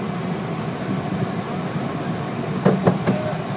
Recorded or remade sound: recorded